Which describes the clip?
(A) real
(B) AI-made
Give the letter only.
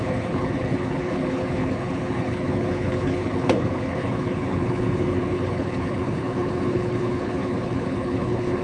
B